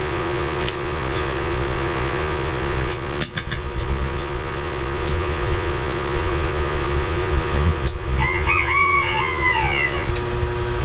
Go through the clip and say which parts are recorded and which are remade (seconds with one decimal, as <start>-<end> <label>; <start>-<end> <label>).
0.0-10.1 remade; 10.1-10.8 recorded